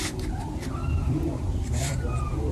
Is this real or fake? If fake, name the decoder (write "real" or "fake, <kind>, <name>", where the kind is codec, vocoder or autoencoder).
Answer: fake, vocoder, BigVGAN v2